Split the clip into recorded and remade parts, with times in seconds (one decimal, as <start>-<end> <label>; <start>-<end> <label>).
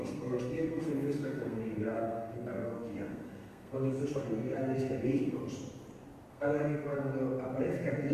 0.0-5.4 remade; 5.4-6.3 recorded; 6.3-7.1 remade; 7.1-7.6 recorded; 7.6-8.1 remade